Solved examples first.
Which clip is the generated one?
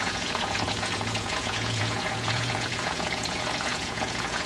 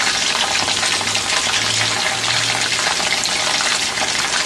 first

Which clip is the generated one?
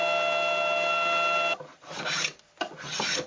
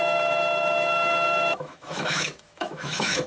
second